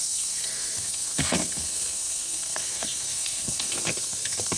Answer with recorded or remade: remade